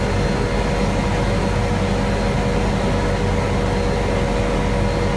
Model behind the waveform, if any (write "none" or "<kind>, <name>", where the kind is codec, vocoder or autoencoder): none